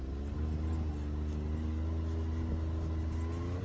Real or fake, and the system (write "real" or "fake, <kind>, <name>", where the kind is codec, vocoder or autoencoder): real